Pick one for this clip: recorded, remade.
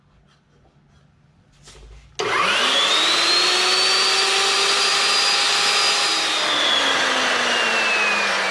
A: recorded